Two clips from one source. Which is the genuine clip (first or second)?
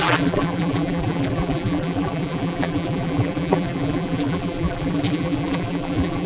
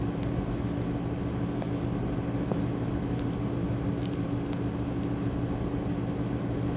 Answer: second